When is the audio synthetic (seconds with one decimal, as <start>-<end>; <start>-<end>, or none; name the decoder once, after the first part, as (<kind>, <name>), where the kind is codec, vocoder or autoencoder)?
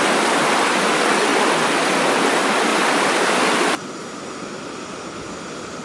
1.3-2.2 (vocoder, BigVGAN v2); 2.7-5.2